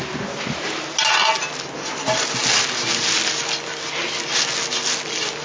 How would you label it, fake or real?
real